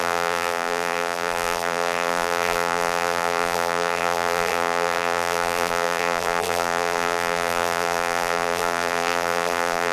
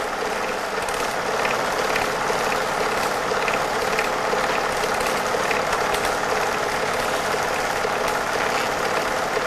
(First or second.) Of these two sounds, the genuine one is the second